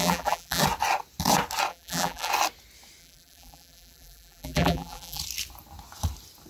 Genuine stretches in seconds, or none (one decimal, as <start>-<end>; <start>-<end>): 0.6-1.7; 2.3-3.0; 5.2-6.5